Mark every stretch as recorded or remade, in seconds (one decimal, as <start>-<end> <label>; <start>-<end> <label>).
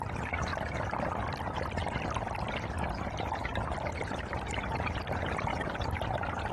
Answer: 0.0-0.5 remade; 0.5-2.9 recorded; 2.9-6.5 remade